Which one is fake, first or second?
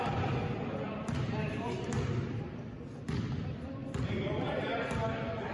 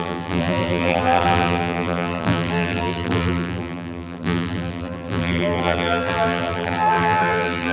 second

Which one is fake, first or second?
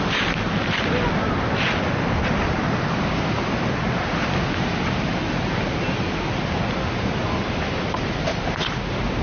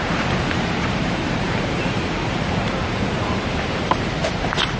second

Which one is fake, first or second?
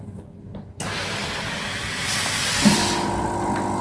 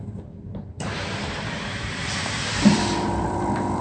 second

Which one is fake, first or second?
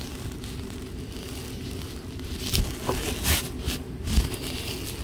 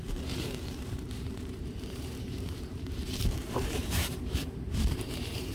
second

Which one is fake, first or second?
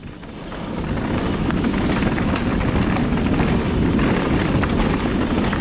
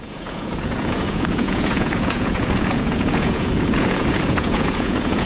second